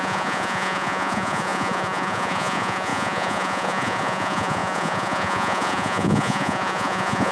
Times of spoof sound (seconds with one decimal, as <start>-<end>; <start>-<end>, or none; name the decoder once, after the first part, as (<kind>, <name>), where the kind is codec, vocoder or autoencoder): 0.0-7.3 (vocoder, Vocos)